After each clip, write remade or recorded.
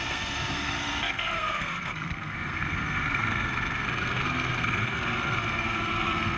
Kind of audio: remade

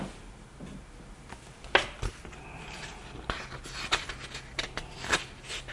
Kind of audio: recorded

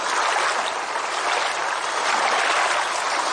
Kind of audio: recorded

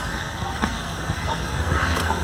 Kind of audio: remade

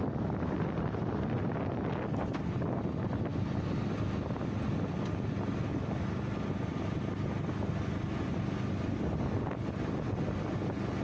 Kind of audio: recorded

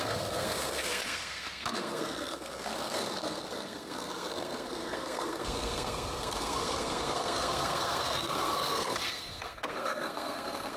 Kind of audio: remade